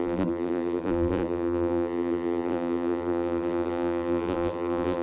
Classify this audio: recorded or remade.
remade